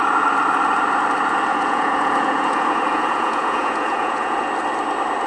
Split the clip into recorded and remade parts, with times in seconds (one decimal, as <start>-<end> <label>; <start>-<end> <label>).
0.0-1.5 recorded; 1.5-4.5 remade; 4.5-5.3 recorded